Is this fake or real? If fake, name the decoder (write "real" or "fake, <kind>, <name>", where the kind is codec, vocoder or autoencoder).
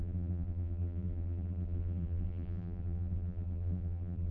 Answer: fake, vocoder, BigVGAN v2